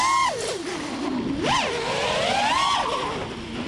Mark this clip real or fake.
real